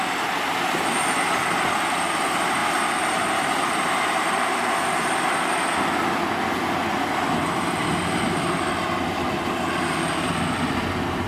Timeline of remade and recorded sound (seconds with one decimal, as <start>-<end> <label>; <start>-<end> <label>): 0.0-11.3 recorded